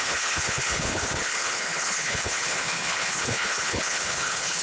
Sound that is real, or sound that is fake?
fake